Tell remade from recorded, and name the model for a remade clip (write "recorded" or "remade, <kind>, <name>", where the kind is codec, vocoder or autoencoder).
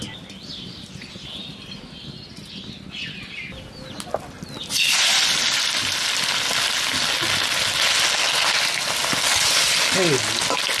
recorded